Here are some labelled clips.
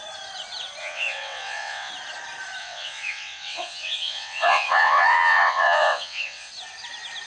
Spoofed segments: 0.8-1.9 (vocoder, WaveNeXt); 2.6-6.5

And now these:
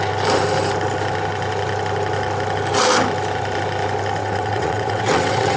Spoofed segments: 4.2-5.6 (vocoder, WaveNeXt)